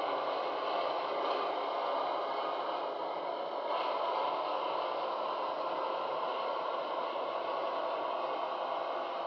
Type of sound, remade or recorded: recorded